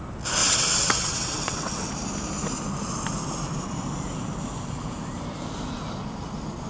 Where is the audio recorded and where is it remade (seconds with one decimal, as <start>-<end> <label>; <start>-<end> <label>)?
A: 0.0-0.4 recorded; 0.4-1.9 remade; 1.9-6.7 recorded